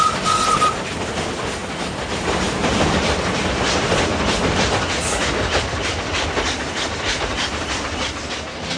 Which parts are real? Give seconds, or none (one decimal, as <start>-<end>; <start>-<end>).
0.0-8.8